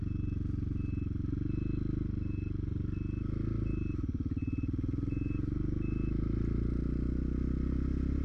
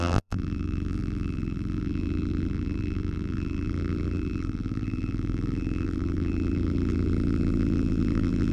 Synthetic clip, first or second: second